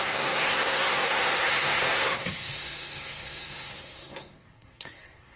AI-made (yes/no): yes